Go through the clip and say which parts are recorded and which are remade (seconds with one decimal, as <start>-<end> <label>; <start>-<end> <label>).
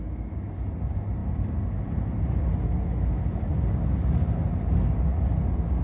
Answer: 0.0-1.2 recorded; 1.2-2.0 remade; 2.0-5.8 recorded